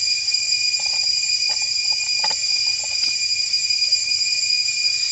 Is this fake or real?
real